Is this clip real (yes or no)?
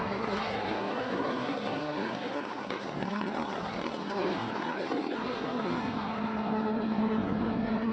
no